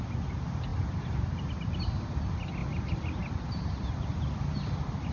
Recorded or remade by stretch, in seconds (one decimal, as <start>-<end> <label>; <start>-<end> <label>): 0.0-5.1 recorded